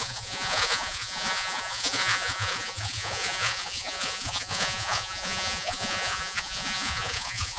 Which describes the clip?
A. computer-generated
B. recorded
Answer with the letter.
A